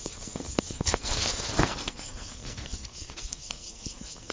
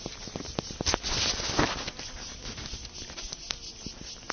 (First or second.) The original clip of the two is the second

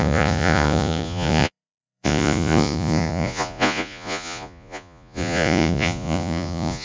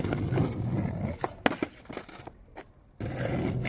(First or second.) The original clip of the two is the second